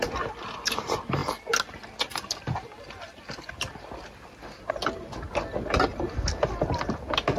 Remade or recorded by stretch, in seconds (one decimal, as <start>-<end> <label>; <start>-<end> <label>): 0.0-7.4 recorded